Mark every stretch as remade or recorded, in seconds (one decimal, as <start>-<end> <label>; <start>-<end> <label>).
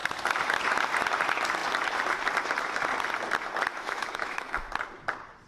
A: 0.0-3.7 recorded; 3.7-4.7 remade; 4.7-5.5 recorded